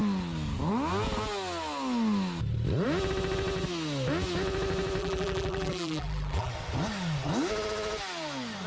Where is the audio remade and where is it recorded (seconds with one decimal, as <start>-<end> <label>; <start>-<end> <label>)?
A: 0.0-5.0 recorded; 5.0-6.5 remade; 6.5-8.7 recorded